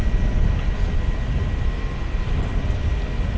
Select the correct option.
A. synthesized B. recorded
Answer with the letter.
B